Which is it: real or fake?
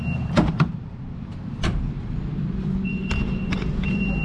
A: fake